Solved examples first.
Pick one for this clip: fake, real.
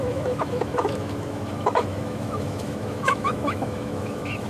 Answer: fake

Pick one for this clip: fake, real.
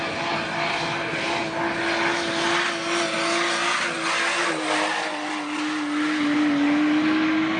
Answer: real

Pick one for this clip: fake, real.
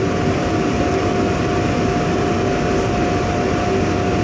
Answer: real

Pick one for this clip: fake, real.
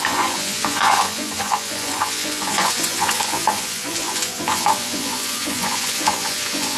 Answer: fake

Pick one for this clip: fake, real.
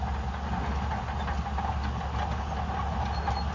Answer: real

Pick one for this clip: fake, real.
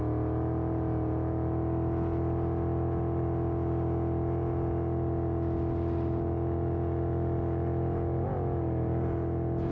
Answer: real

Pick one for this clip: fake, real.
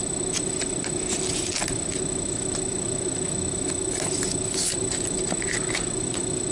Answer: real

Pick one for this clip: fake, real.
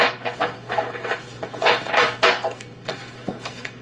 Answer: fake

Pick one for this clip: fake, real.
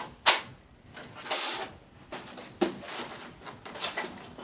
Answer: real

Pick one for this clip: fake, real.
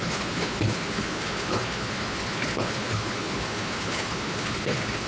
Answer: fake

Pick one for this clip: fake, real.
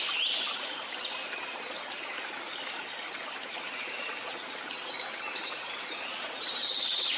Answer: real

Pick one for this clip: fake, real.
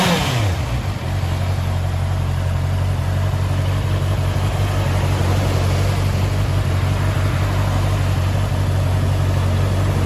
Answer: real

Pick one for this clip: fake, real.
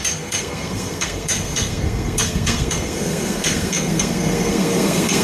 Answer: fake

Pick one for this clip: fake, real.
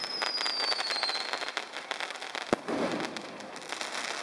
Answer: real